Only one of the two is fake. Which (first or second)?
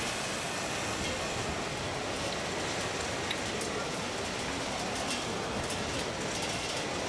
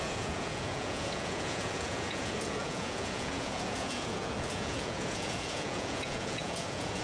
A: second